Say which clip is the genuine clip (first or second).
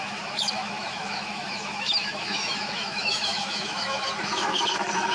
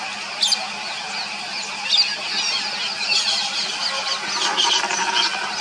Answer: second